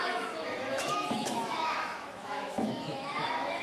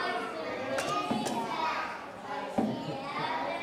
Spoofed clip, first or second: first